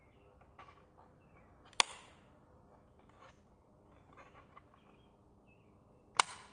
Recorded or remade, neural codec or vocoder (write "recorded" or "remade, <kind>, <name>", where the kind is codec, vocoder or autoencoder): recorded